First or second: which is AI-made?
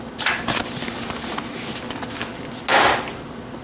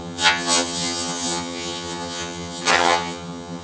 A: second